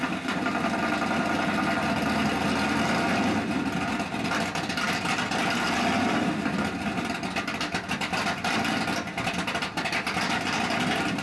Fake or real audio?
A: real